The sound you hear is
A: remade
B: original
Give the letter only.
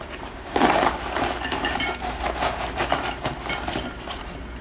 A